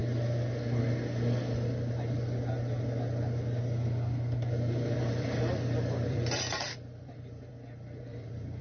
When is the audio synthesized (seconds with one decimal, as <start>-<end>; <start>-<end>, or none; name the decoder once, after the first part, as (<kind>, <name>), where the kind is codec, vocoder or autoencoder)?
5.0-7.5 (vocoder, BigVGAN v2); 8.0-8.6